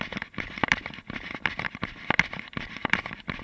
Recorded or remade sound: remade